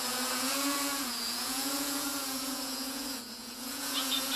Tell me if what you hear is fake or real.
fake